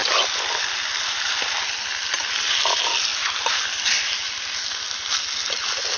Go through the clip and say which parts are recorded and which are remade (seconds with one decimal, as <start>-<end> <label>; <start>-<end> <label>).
0.0-6.0 recorded